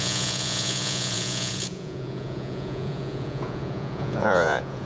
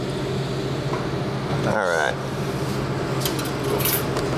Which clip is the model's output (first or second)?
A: first